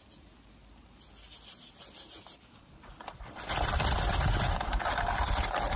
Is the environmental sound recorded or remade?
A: recorded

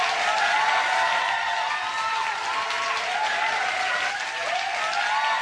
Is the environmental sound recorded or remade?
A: recorded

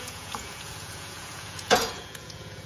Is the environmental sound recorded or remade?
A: remade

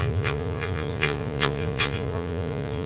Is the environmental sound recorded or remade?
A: remade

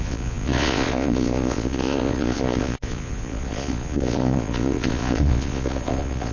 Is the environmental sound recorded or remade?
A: remade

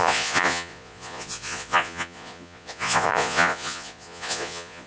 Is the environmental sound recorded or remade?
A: remade